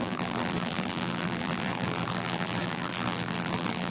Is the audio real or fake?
fake